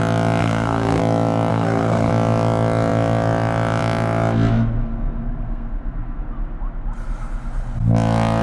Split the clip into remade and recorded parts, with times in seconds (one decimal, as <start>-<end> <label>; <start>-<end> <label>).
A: 0.0-0.4 recorded; 0.4-1.0 remade; 1.0-1.5 recorded; 1.5-2.1 remade; 2.1-4.8 recorded; 4.8-6.2 remade; 6.2-8.4 recorded